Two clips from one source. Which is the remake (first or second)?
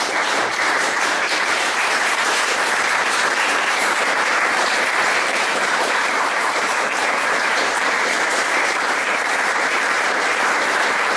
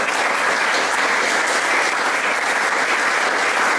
first